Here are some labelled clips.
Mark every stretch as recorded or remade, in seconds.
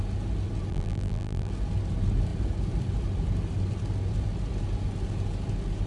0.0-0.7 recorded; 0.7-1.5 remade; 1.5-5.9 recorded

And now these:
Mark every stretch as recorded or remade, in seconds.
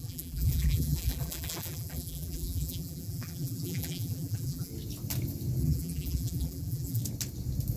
0.0-4.7 remade; 4.7-5.6 recorded; 5.6-7.0 remade; 7.0-7.8 recorded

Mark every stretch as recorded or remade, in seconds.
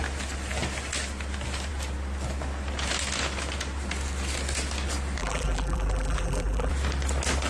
0.0-5.2 recorded; 5.2-6.7 remade; 6.7-7.5 recorded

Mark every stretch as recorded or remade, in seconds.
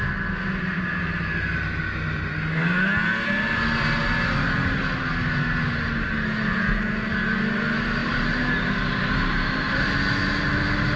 0.0-8.0 recorded; 8.0-9.9 remade; 9.9-11.0 recorded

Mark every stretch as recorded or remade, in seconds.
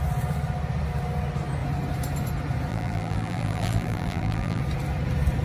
0.0-2.7 recorded; 2.7-4.6 remade; 4.6-5.4 recorded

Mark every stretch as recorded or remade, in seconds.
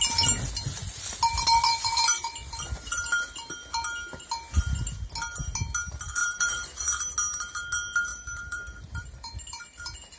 0.0-1.7 recorded; 1.7-3.5 remade; 3.5-6.2 recorded; 6.2-6.8 remade; 6.8-8.1 recorded; 8.1-10.2 remade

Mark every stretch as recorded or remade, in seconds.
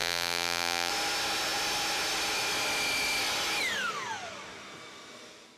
0.0-0.9 remade; 0.9-5.6 recorded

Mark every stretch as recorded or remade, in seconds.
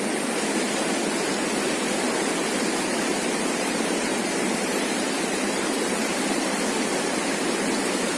0.0-3.1 recorded; 3.1-6.6 remade; 6.6-8.2 recorded